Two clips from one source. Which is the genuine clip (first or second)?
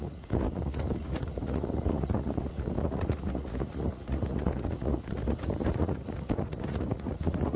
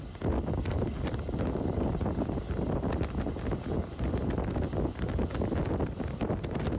second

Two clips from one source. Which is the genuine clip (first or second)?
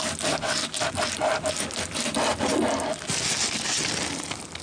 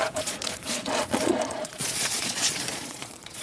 first